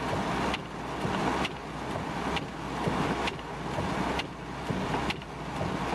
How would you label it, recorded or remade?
recorded